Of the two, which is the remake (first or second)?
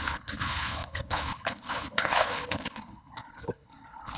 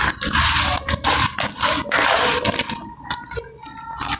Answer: first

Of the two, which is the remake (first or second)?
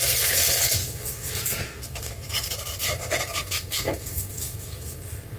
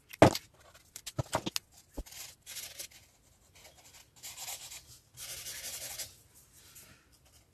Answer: first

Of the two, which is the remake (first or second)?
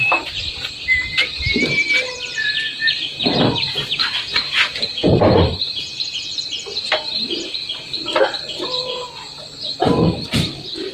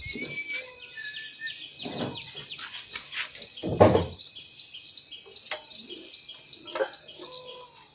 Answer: first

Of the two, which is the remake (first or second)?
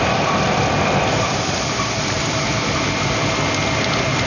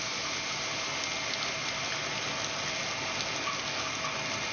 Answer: first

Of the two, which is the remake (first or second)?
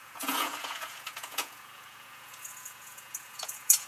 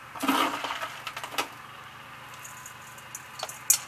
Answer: first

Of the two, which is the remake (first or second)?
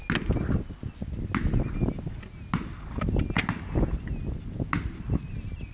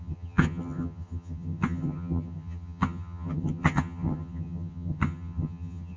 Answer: second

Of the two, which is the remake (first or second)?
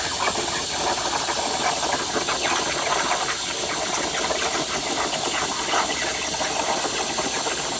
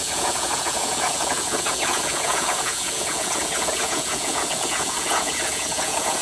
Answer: second